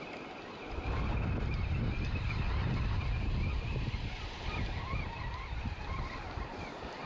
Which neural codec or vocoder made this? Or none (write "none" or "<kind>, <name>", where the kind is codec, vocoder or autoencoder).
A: none